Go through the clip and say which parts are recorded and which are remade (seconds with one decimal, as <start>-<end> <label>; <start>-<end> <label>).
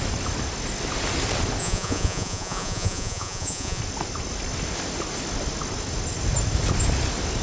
0.0-1.6 recorded; 1.6-3.8 remade; 3.8-7.4 recorded